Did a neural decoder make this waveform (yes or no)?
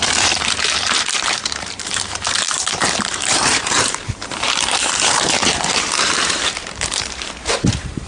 yes